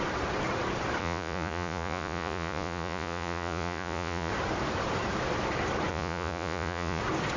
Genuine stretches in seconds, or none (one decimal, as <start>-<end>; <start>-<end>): 0.0-1.0; 4.3-5.9; 7.0-7.4